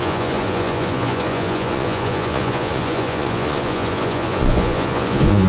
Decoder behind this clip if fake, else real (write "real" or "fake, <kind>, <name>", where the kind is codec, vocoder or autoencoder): fake, vocoder, Vocos